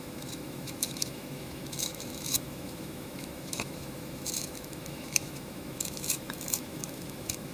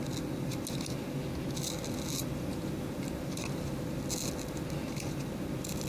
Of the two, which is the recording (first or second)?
second